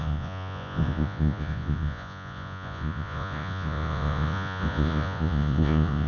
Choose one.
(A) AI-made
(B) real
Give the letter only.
A